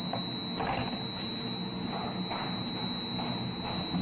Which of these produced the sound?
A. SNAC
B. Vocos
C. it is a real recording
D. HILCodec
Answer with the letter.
C